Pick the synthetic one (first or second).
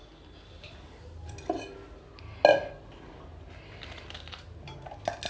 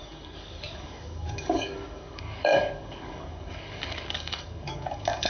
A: second